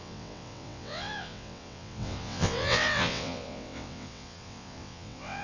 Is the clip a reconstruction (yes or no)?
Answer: yes